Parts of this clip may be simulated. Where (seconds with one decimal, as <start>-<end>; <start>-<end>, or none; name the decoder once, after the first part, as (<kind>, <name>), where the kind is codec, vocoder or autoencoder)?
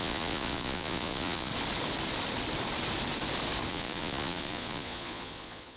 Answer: 0.0-1.5 (vocoder, Vocos); 3.7-5.8